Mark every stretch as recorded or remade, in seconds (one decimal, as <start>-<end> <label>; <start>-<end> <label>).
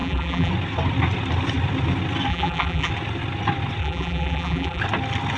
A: 0.0-0.5 remade; 0.5-2.3 recorded; 2.3-2.9 remade; 2.9-3.8 recorded; 3.8-4.8 remade; 4.8-5.4 recorded